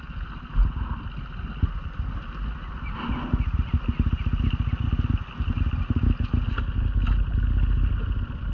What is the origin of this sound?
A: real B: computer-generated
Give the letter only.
A